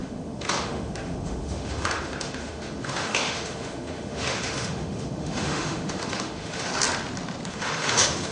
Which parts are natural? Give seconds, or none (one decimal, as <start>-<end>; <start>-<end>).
6.7-7.5